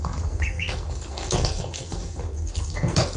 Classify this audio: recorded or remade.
remade